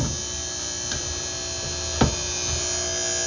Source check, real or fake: real